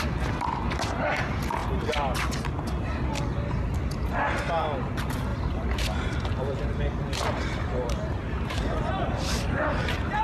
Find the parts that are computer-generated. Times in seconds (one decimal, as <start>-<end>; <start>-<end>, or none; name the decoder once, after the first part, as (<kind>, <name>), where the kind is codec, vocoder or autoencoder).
5.3-10.2 (vocoder, BigVGAN v2)